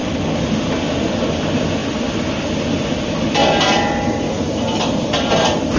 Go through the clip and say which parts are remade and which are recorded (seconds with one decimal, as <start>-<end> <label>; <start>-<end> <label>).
0.0-1.8 remade; 1.8-2.6 recorded; 2.6-3.4 remade; 3.4-4.8 recorded; 4.8-5.8 remade